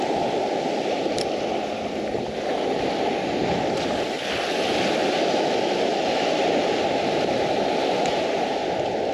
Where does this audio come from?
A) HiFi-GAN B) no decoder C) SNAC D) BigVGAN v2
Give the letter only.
B